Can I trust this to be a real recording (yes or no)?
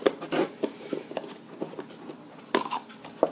yes